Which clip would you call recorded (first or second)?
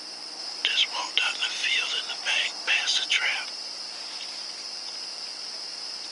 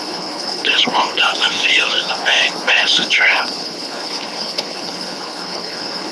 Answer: first